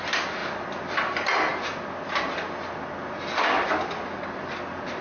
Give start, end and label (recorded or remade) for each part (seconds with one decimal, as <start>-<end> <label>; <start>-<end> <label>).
0.0-5.0 recorded